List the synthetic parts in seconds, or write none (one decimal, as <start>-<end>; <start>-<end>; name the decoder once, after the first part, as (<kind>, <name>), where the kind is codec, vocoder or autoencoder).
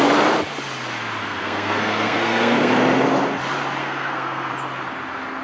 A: 1.2-2.7 (codec, SNAC); 3.8-4.5